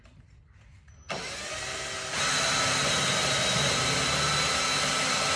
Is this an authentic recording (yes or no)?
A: yes